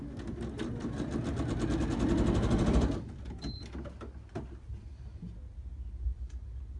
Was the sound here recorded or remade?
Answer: recorded